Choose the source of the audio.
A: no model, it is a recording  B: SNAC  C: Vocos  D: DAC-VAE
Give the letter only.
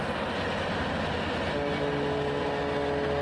A